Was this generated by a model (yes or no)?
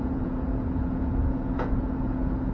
yes